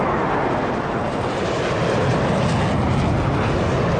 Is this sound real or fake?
real